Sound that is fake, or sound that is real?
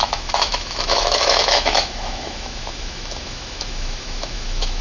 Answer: fake